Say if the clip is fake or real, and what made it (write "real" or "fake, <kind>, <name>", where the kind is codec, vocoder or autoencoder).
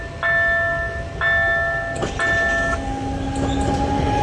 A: real